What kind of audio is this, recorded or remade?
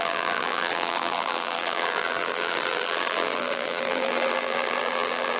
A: remade